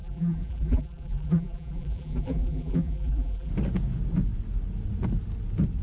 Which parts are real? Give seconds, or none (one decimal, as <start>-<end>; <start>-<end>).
3.5-5.8